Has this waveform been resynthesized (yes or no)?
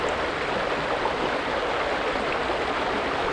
no